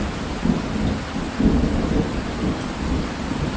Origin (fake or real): real